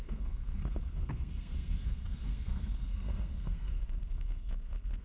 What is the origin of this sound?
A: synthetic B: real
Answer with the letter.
A